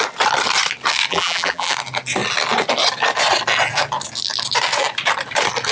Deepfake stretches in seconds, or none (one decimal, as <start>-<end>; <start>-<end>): 1.1-1.7